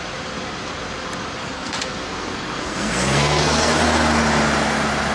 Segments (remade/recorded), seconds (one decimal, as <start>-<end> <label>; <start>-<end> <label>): 0.0-1.4 recorded; 1.4-3.8 remade; 3.8-5.1 recorded